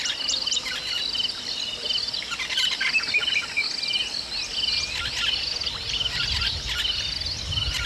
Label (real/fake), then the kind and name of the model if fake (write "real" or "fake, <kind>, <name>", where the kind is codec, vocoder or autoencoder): real